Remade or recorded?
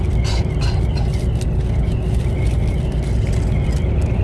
recorded